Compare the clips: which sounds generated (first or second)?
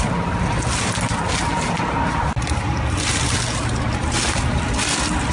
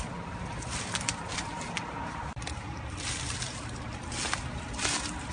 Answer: second